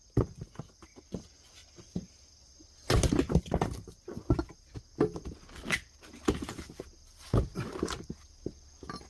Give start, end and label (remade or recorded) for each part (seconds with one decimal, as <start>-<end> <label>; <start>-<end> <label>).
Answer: 0.0-9.1 recorded